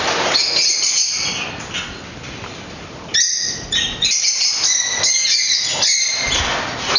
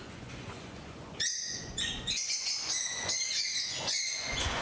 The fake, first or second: second